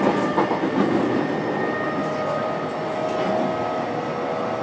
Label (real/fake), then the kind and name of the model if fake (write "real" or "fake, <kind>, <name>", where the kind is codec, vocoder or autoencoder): real